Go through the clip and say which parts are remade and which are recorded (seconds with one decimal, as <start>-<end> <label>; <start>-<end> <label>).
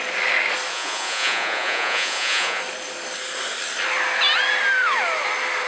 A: 0.0-0.7 recorded; 0.7-2.6 remade; 2.6-5.7 recorded